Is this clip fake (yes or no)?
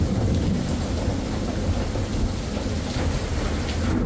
no